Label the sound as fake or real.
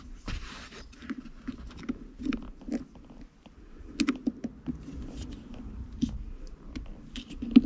real